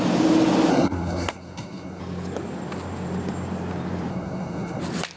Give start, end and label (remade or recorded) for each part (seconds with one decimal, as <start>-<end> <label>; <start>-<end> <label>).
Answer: 0.0-0.7 recorded; 0.7-2.0 remade; 2.0-4.1 recorded; 4.1-4.8 remade; 4.8-5.2 recorded